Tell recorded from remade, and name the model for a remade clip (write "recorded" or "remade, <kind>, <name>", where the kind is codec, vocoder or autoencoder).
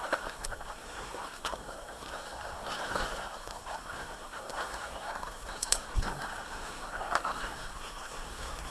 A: remade, codec, SNAC